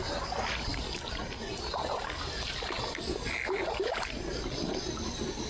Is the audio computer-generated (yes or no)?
no